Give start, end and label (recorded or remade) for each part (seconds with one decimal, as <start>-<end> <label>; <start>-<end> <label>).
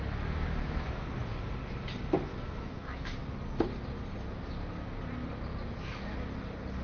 0.0-0.6 recorded; 0.6-1.1 remade; 1.1-2.3 recorded; 2.3-3.2 remade; 3.2-6.8 recorded